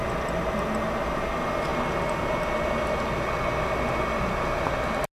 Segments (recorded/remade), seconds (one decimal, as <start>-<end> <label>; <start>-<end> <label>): 0.0-5.2 recorded